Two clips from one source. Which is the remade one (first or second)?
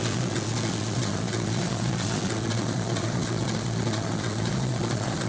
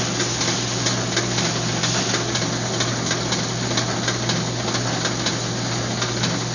first